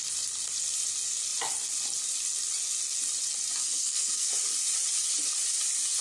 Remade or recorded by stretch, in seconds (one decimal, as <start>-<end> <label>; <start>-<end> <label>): 0.0-3.6 recorded; 3.6-4.3 remade; 4.3-6.0 recorded